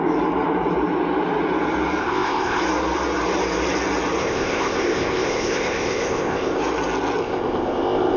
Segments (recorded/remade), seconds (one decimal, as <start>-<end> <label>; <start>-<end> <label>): 0.0-2.0 recorded; 2.0-2.6 remade; 2.6-4.2 recorded; 4.2-6.6 remade; 6.6-7.2 recorded; 7.2-8.2 remade